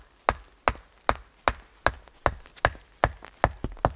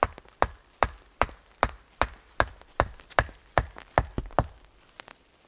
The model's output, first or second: second